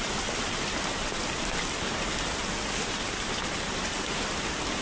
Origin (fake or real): real